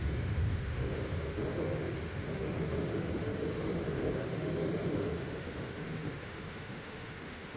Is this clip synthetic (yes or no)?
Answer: yes